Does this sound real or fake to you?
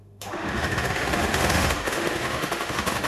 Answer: fake